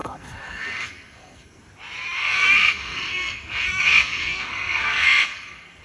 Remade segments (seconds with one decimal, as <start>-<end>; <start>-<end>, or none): 0.0-1.6; 2.2-5.8